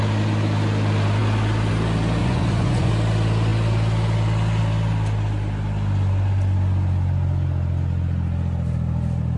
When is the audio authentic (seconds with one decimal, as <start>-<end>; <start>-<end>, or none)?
0.0-2.2; 2.9-9.4